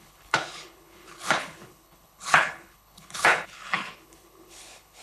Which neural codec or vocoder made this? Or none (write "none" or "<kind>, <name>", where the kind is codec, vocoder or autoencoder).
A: codec, HILCodec